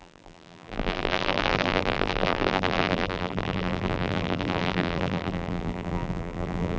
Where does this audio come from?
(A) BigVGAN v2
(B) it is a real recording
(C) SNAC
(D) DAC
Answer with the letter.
A